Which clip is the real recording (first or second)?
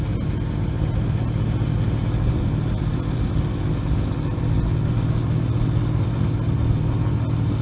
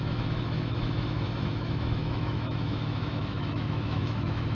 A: first